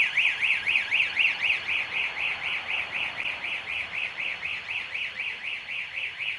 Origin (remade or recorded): remade